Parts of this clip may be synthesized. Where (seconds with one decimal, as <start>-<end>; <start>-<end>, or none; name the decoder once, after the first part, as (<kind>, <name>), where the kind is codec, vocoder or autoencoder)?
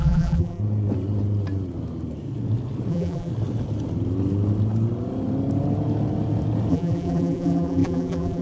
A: 0.0-0.6 (vocoder, BigVGAN v2); 2.9-3.3; 6.7-8.4